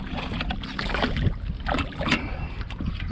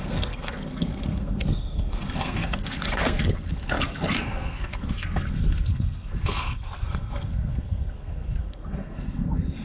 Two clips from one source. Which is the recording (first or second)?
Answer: first